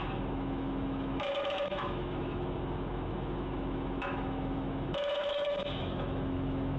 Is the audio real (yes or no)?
no